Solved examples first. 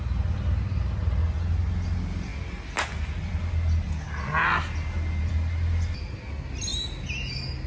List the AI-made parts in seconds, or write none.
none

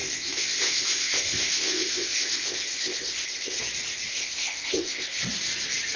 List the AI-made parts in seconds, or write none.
0.0-3.6 (codec, ZipCodec); 4.1-5.2